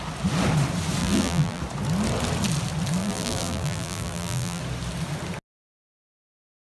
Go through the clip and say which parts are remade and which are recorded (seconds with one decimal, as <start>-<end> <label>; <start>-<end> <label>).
0.0-1.0 recorded; 1.0-1.6 remade; 1.6-3.0 recorded; 3.0-4.6 remade; 4.6-6.7 recorded